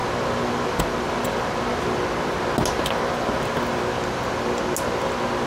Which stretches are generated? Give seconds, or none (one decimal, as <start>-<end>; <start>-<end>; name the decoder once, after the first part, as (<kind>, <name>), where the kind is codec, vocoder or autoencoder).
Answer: none